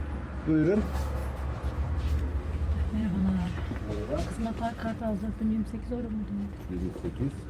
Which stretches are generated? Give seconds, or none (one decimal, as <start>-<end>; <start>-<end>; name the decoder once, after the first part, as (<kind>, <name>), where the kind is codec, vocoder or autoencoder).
1.2-2.0 (vocoder, BigVGAN v2); 2.7-4.3